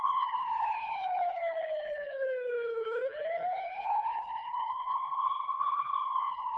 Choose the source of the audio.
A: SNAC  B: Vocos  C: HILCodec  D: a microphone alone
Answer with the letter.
C